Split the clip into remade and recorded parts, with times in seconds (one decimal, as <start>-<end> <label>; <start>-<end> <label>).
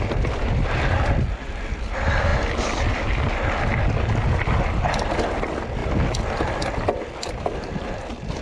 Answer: 0.0-8.4 recorded